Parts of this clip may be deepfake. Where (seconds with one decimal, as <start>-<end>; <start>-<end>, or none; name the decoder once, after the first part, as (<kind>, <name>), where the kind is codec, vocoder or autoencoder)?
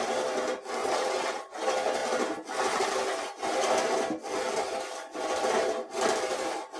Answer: 0.8-1.4 (vocoder, WaveNeXt)